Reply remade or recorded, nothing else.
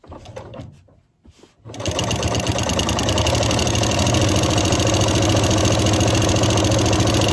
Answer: recorded